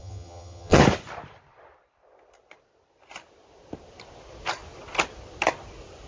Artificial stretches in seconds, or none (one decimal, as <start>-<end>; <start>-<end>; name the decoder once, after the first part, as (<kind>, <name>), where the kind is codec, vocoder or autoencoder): 0.0-0.8 (vocoder, HiFi-GAN)